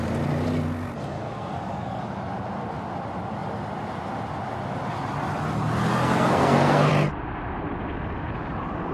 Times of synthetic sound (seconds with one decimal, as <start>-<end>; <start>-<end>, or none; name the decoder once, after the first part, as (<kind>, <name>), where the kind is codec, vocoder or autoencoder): 1.1-2.0 (codec, SNAC); 5.9-6.9